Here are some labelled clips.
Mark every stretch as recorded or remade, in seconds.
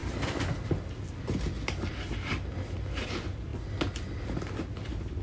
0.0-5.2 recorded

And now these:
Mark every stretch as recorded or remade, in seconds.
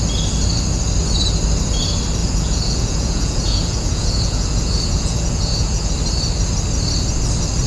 0.0-2.2 recorded; 2.2-5.9 remade; 5.9-7.7 recorded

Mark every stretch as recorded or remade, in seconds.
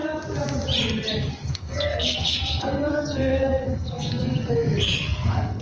0.0-1.5 recorded; 1.5-5.6 remade